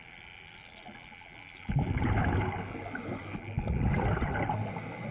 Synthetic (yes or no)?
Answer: no